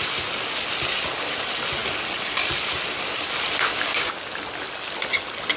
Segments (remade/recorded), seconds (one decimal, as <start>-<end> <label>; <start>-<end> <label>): 0.0-3.7 recorded; 3.7-4.3 remade; 4.3-5.6 recorded